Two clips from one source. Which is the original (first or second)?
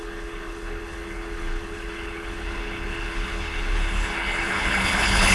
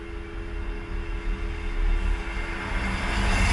second